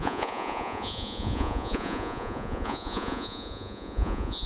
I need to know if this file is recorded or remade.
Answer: remade